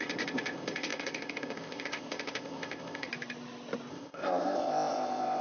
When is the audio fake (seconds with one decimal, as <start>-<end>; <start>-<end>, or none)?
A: 0.0-3.1; 3.9-5.4